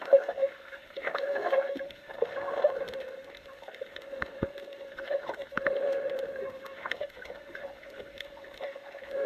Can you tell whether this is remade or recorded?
remade